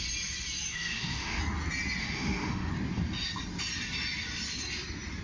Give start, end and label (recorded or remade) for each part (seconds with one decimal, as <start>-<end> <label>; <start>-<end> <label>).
0.0-0.7 recorded; 0.7-1.4 remade; 1.4-2.0 recorded; 2.0-2.7 remade; 2.7-5.2 recorded